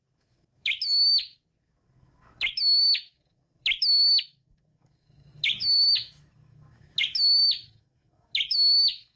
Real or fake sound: fake